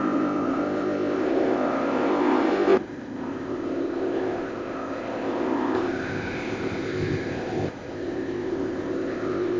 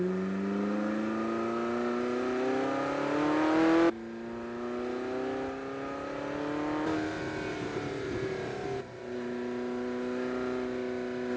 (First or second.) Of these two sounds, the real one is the second